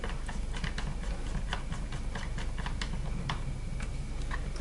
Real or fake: real